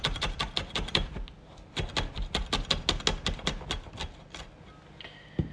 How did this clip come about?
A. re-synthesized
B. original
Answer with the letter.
B